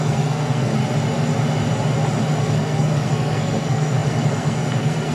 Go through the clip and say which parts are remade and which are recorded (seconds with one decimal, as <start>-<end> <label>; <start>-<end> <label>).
0.0-0.8 remade; 0.8-2.4 recorded; 2.4-5.1 remade